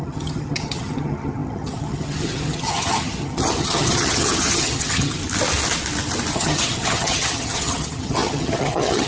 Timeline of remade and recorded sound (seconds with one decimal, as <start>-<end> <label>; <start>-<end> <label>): 0.0-5.2 remade; 5.2-6.3 recorded; 6.3-9.1 remade